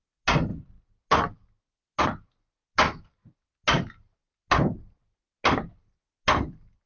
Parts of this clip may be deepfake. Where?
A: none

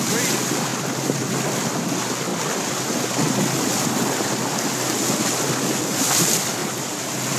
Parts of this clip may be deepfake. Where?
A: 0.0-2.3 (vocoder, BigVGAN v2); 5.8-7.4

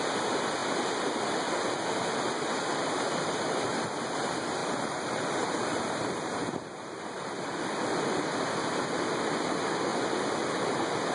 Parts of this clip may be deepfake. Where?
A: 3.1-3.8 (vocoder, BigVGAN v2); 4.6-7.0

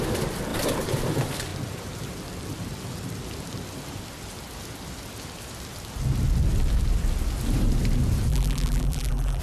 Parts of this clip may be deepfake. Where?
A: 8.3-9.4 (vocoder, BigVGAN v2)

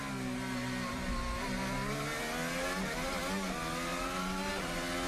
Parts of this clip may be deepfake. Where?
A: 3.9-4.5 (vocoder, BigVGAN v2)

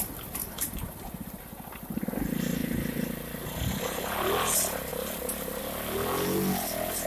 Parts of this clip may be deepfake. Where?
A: 0.4-1.4 (vocoder, BigVGAN v2); 2.6-3.2; 4.9-5.6

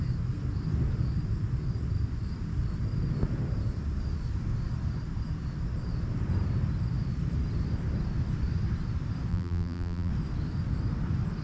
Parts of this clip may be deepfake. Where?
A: 9.3-10.1 (vocoder, BigVGAN v2)